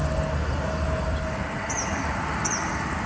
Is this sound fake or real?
real